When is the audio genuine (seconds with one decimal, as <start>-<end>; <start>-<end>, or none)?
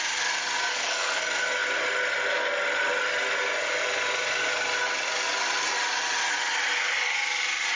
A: 0.0-0.7; 1.2-7.8